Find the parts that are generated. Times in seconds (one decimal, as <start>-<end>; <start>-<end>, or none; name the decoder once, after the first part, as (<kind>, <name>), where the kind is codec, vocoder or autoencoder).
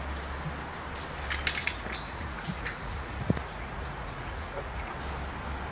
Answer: 1.6-5.0 (vocoder, Vocos)